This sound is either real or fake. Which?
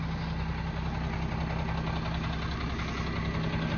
real